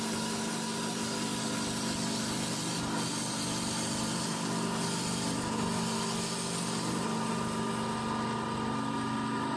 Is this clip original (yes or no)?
yes